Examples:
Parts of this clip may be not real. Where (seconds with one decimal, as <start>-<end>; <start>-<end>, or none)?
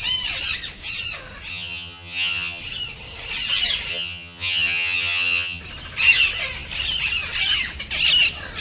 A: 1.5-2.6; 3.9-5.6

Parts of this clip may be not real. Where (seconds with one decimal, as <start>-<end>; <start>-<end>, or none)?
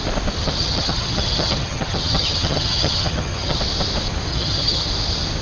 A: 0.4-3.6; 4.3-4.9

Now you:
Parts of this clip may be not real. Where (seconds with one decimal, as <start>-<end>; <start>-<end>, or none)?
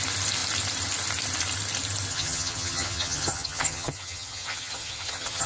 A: 2.1-5.5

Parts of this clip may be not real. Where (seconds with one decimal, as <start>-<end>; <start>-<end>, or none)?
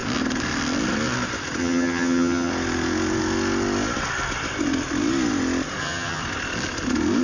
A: 1.6-2.5; 5.8-6.2